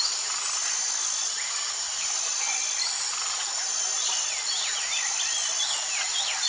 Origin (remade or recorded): recorded